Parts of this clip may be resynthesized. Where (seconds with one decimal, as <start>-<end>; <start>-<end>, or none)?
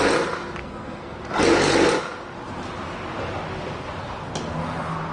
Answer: 0.6-1.2